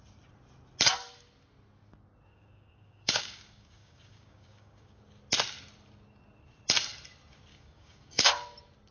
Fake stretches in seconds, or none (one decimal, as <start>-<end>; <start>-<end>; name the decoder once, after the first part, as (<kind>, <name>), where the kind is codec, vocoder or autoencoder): 2.3-5.0 (codec, DAC); 7.5-8.3